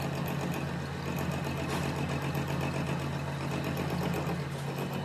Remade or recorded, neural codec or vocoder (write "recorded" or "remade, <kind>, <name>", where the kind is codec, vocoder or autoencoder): recorded